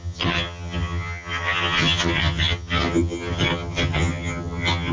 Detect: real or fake fake